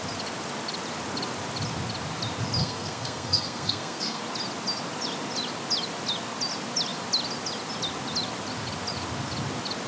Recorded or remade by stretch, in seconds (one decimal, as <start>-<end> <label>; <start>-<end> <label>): 0.0-2.6 recorded; 2.6-4.2 remade; 4.2-9.9 recorded